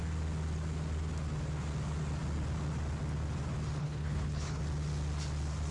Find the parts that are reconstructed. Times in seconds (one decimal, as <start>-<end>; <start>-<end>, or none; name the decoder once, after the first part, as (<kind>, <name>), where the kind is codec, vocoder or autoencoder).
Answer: 3.8-4.6 (codec, HILCodec)